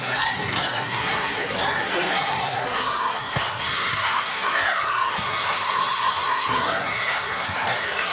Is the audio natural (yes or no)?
no